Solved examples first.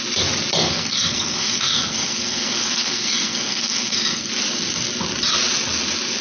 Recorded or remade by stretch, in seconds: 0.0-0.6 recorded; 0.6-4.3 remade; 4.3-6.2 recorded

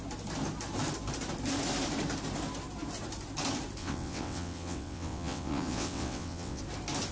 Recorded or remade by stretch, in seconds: 0.0-3.8 recorded; 3.8-6.6 remade; 6.6-7.1 recorded

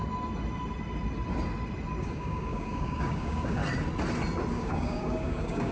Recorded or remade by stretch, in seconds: 0.0-2.0 recorded; 2.0-3.6 remade; 3.6-4.5 recorded; 4.5-5.7 remade

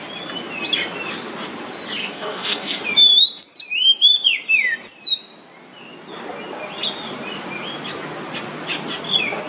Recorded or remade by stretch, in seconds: 0.0-2.0 recorded; 2.0-2.8 remade; 2.8-9.5 recorded

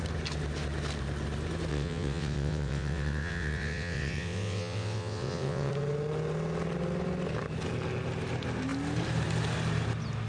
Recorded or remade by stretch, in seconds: 0.0-1.7 recorded; 1.7-5.7 remade; 5.7-10.3 recorded

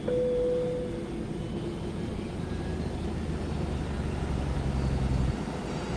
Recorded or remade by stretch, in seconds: 0.0-6.0 recorded

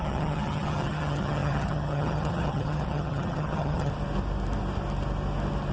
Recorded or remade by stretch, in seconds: 0.0-3.9 remade; 3.9-5.7 recorded

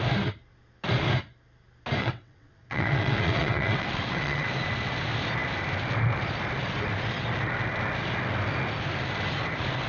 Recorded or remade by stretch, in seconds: 0.0-2.0 recorded; 2.0-4.5 remade; 4.5-9.9 recorded